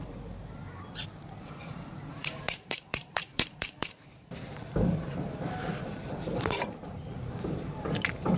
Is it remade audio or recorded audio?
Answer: remade